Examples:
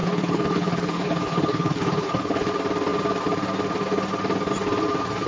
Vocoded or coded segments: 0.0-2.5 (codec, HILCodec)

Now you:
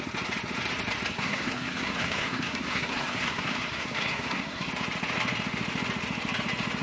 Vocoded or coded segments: 1.1-4.7 (codec, SNAC)

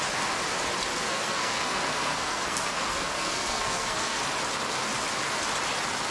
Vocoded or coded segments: 0.9-4.2 (codec, SNAC)

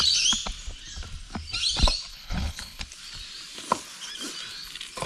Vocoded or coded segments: 2.1-2.8 (codec, HILCodec)

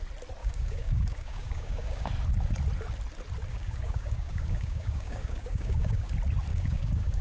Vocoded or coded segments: 0.4-2.1 (codec, DAC); 3.5-6.1; 6.5-7.2

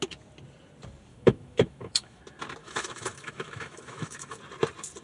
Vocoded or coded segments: 1.1-2.2 (autoencoder, DAC-VAE); 2.6-4.4